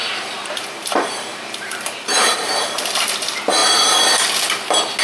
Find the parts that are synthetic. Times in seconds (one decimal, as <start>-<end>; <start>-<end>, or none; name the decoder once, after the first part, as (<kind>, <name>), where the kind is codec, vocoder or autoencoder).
0.0-3.0 (vocoder, BigVGAN v2)